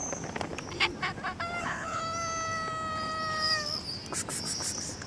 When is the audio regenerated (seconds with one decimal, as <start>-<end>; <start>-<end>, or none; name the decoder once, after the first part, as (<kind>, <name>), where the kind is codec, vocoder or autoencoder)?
1.6-2.0 (codec, HILCodec)